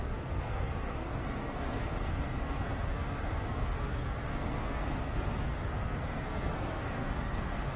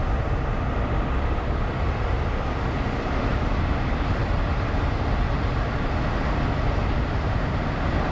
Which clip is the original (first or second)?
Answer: second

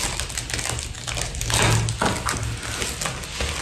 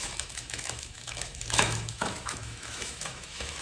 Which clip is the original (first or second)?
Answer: first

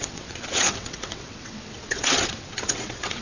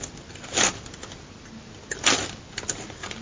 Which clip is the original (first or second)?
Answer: second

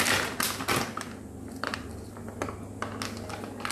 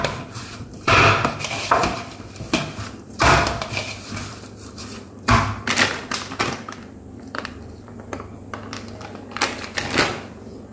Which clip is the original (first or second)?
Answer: first